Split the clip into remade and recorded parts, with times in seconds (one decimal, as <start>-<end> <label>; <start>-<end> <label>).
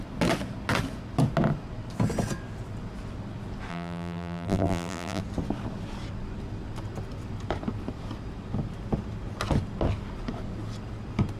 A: 0.0-3.7 recorded; 3.7-5.2 remade; 5.2-11.4 recorded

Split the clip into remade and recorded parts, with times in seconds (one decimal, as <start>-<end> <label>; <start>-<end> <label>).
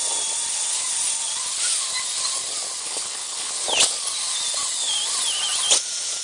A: 0.0-2.8 recorded; 2.8-3.5 remade; 3.5-6.2 recorded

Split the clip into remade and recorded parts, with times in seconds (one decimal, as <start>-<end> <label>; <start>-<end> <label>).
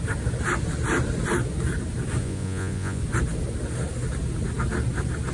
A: 0.0-2.2 recorded; 2.2-3.0 remade; 3.0-5.3 recorded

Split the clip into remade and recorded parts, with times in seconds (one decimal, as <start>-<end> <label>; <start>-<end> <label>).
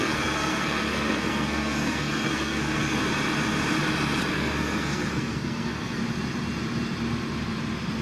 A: 0.0-3.0 remade; 3.0-4.3 recorded; 4.3-6.0 remade; 6.0-8.0 recorded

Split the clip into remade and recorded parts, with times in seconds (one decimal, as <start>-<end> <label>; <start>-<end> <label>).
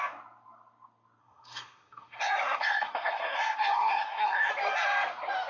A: 0.0-1.2 recorded; 1.2-4.5 remade; 4.5-5.5 recorded